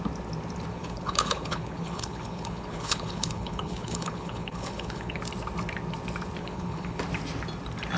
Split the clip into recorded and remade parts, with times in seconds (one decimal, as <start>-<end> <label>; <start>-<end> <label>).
0.0-0.7 recorded; 0.7-5.2 remade; 5.2-6.4 recorded; 6.4-7.0 remade; 7.0-8.0 recorded